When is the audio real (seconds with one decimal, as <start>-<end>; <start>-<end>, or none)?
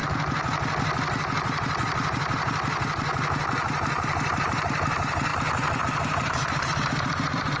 0.0-4.4; 5.3-5.8